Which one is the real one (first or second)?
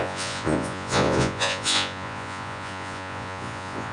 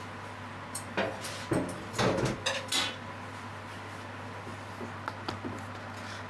second